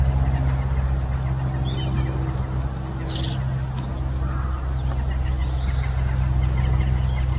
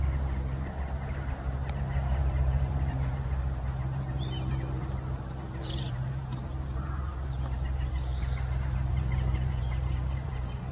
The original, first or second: first